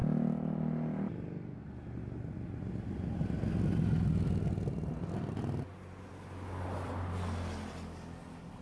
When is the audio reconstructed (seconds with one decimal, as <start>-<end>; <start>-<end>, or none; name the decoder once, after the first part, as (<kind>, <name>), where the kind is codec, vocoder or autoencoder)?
none